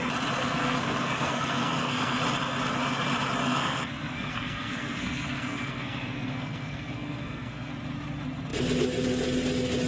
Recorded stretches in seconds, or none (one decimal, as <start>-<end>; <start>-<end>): 0.0-0.4; 2.2-3.4; 7.7-9.9